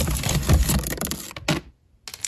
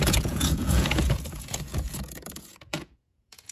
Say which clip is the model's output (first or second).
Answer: second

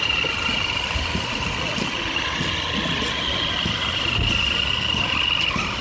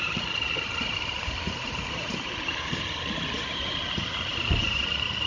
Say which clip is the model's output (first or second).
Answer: second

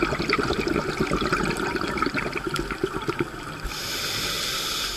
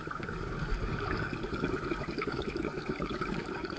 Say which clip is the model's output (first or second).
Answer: second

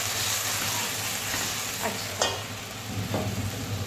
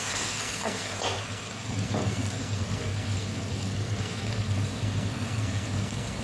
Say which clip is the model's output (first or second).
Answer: second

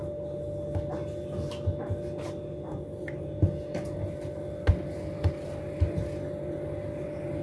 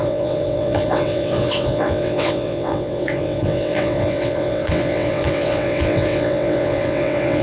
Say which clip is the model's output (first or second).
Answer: second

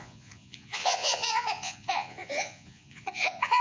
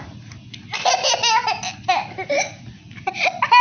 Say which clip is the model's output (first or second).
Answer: first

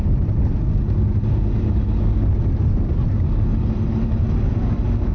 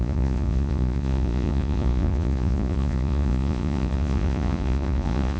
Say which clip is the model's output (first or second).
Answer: second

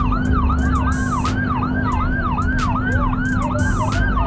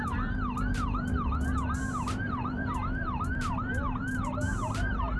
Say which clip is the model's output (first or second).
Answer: second